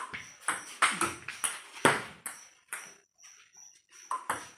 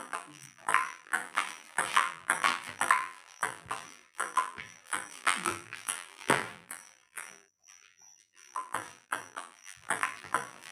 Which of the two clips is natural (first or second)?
first